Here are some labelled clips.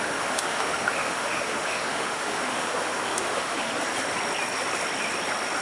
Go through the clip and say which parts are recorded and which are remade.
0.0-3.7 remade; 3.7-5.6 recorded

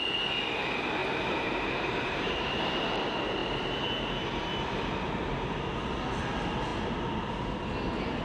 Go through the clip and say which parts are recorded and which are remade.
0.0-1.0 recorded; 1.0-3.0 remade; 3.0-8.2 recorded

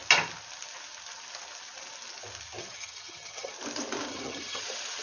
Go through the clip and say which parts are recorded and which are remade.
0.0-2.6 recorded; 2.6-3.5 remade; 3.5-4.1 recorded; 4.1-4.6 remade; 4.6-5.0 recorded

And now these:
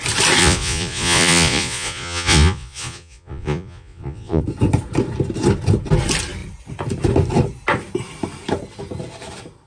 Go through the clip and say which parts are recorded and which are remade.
0.0-0.4 recorded; 0.4-4.4 remade; 4.4-9.7 recorded